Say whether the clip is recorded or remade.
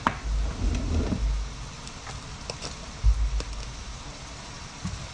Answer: recorded